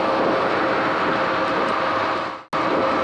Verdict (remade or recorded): recorded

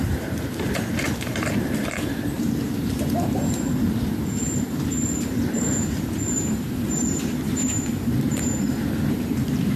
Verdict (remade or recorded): remade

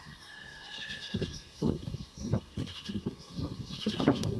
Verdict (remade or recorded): remade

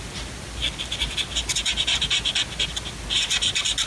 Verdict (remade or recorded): recorded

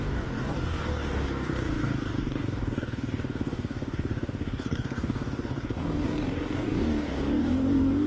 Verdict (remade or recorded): remade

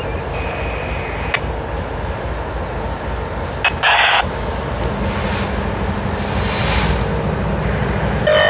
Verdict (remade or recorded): recorded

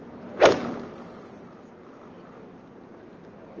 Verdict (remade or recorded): recorded